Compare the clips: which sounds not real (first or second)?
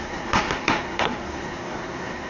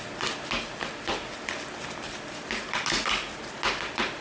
first